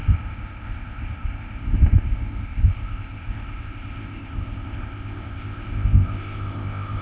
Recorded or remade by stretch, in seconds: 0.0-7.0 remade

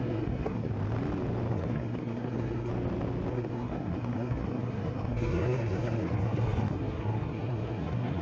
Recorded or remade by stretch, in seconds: 0.0-0.7 remade; 0.7-1.5 recorded; 1.5-2.7 remade; 2.7-3.3 recorded; 3.3-8.2 remade

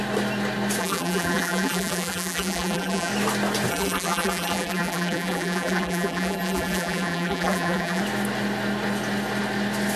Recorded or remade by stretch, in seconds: 0.0-0.8 recorded; 0.8-3.1 remade; 3.1-3.7 recorded; 3.7-8.0 remade; 8.0-10.0 recorded

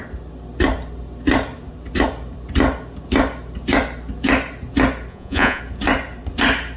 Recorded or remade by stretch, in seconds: 0.0-5.1 recorded; 5.1-5.6 remade; 5.6-6.8 recorded